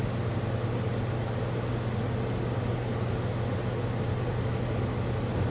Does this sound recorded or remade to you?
recorded